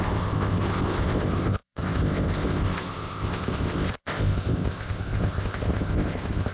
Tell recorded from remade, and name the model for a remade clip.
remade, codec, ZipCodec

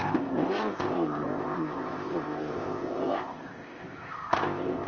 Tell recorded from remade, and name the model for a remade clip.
remade, codec, ZipCodec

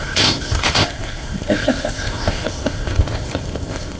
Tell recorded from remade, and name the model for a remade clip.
remade, codec, ZipCodec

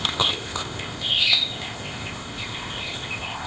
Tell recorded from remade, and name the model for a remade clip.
remade, codec, ZipCodec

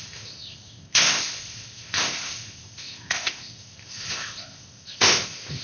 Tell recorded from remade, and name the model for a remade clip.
remade, codec, ZipCodec